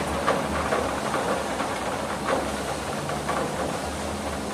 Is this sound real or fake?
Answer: fake